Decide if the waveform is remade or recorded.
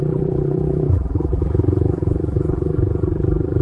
remade